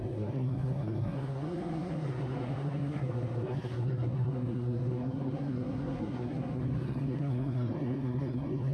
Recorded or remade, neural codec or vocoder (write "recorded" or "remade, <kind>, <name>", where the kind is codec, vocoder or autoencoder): remade, codec, SNAC